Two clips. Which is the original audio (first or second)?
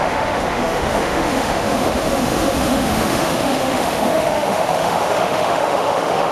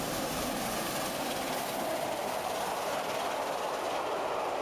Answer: second